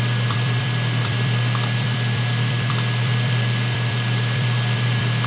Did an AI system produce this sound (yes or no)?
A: yes